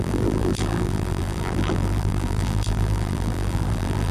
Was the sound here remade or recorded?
remade